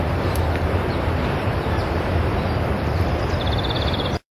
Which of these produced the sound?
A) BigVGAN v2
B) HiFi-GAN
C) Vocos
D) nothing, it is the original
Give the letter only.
A